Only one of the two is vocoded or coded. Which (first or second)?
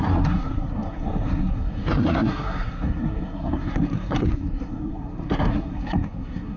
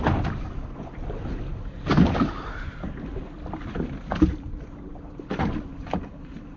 first